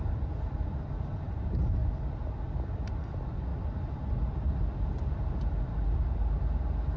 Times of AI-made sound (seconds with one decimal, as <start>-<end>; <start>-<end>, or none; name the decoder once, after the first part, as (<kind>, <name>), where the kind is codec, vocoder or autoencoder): 0.0-1.8 (vocoder, BigVGAN v2); 2.4-3.5; 4.9-7.0

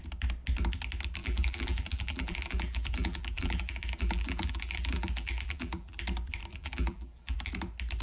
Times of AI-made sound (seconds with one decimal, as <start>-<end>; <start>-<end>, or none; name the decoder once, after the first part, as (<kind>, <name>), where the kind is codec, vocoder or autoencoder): 1.2-6.0 (vocoder, BigVGAN v2); 6.5-7.5

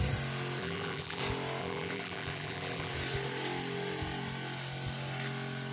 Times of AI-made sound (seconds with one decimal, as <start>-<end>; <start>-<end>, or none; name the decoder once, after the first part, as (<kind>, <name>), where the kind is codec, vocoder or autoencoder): 0.6-1.2 (vocoder, BigVGAN v2); 1.6-2.9

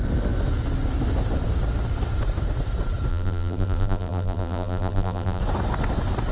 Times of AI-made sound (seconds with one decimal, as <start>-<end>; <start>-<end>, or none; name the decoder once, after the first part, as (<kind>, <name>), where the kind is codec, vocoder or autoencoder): 3.1-5.4 (vocoder, BigVGAN v2)

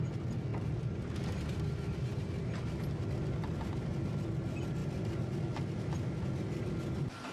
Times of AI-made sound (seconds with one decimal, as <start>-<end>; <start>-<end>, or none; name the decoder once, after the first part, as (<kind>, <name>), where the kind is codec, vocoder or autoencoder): none

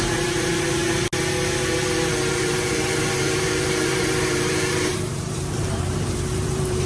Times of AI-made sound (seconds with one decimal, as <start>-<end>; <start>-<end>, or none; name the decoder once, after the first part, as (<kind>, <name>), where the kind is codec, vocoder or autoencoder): 0.0-0.8 (vocoder, BigVGAN v2); 2.3-6.9

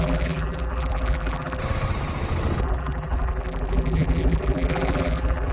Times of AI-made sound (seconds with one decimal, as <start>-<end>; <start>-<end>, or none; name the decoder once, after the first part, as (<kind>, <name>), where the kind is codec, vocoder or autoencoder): 0.0-1.6 (vocoder, BigVGAN v2); 2.6-5.5